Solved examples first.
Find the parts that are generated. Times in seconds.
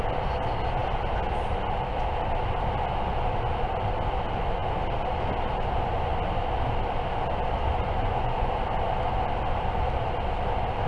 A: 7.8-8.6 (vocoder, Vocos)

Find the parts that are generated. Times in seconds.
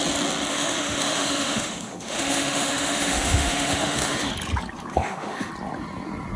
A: 0.5-4.3 (autoencoder, DAC-VAE); 4.9-5.5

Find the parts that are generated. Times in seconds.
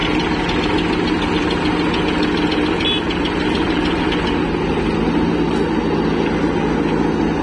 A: none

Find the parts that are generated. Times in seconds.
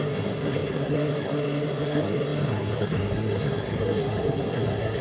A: 0.0-5.0 (codec, SNAC)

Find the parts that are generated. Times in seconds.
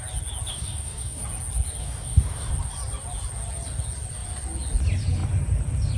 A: 0.5-1.2 (codec, DAC); 1.8-2.5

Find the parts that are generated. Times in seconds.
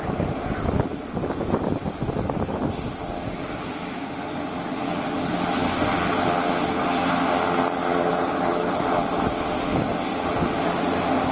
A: 8.1-8.8 (codec, HILCodec)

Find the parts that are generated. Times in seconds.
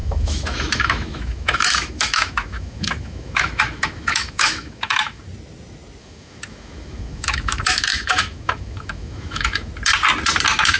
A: 0.0-5.2 (autoencoder, DAC-VAE); 6.0-9.7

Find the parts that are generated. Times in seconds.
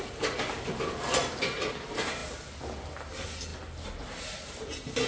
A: none